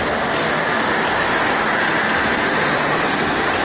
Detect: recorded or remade recorded